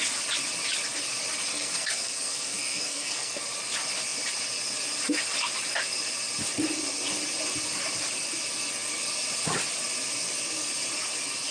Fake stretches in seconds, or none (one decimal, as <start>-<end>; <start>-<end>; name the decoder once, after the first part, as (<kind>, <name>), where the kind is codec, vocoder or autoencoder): 1.5-3.4 (codec, SNAC)